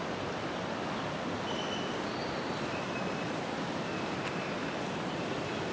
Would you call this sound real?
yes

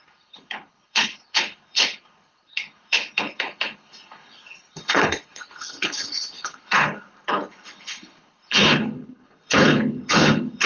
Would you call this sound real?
no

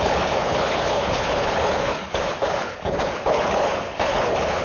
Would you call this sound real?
no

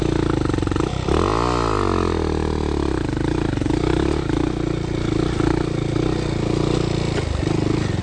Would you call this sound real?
yes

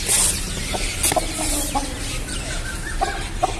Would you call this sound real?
yes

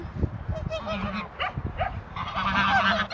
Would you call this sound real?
yes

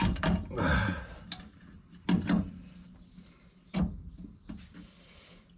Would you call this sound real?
yes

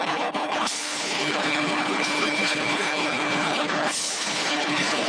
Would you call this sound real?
no